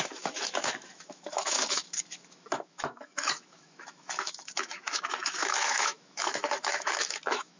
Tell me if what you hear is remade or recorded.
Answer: remade